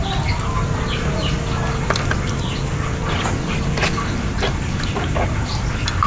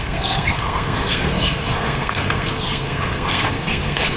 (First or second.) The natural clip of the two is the first